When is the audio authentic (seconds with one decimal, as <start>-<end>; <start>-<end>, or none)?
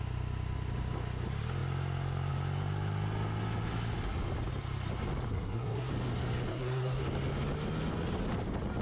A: 0.0-5.3; 5.9-6.5; 7.0-8.8